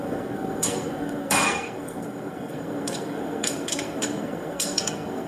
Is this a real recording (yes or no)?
no